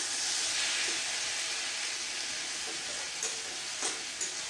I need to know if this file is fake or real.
real